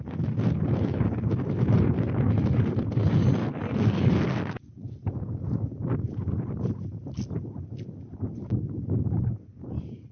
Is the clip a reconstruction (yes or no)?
no